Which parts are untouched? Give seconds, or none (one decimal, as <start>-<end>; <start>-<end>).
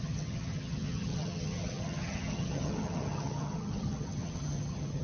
none